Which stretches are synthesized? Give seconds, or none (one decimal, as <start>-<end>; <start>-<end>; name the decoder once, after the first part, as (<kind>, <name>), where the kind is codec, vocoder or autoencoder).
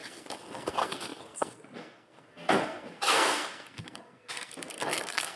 0.0-5.4 (codec, SNAC)